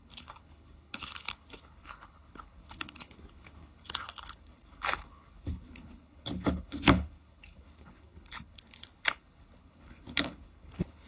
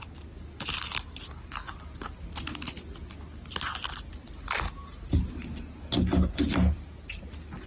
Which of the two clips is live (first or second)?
second